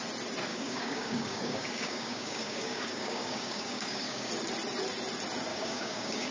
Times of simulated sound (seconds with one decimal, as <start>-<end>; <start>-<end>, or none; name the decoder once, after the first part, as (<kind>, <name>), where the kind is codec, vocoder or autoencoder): 0.5-4.3 (codec, DAC); 5.5-6.3